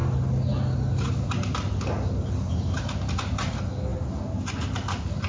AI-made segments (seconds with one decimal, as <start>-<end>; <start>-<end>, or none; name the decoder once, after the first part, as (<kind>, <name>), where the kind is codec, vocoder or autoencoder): none